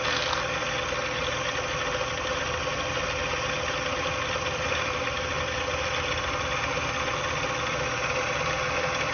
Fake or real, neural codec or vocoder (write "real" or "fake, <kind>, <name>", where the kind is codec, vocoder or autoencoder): real